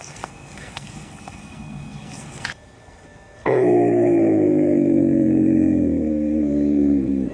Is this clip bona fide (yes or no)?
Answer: no